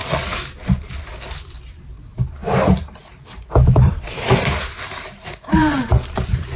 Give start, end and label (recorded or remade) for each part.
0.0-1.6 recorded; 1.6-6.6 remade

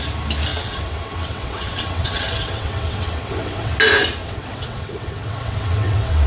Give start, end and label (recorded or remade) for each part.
0.0-0.5 recorded; 0.5-3.7 remade; 3.7-4.2 recorded; 4.2-6.3 remade

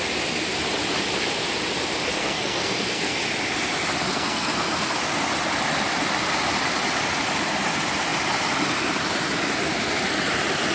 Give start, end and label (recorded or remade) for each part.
0.0-2.2 recorded; 2.2-3.2 remade; 3.2-4.1 recorded; 4.1-5.0 remade; 5.0-10.7 recorded

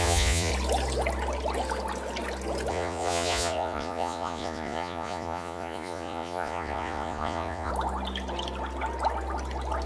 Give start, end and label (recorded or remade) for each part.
0.0-0.5 remade; 0.5-2.7 recorded; 2.7-7.7 remade; 7.7-9.9 recorded

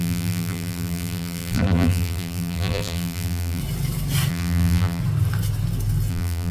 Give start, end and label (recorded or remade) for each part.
0.0-3.6 remade; 3.6-4.3 recorded; 4.3-5.0 remade; 5.0-6.1 recorded; 6.1-6.5 remade

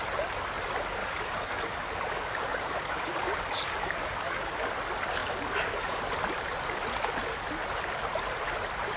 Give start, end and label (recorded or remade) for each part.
0.0-1.0 recorded; 1.0-4.7 remade; 4.7-5.2 recorded; 5.2-6.0 remade; 6.0-9.0 recorded